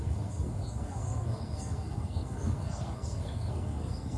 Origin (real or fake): fake